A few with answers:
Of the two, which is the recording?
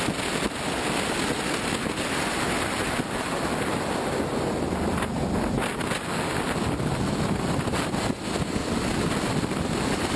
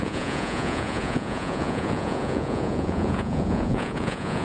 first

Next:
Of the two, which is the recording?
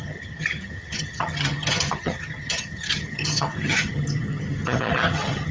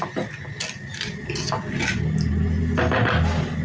second